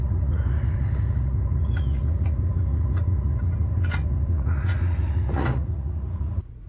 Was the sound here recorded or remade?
remade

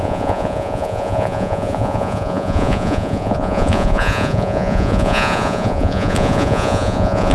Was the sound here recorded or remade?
remade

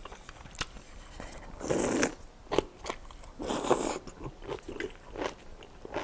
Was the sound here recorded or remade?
recorded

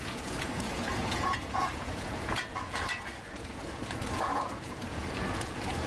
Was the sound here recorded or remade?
remade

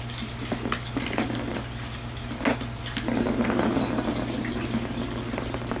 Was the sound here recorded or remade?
recorded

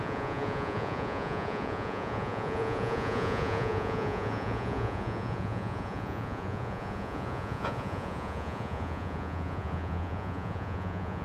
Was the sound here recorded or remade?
remade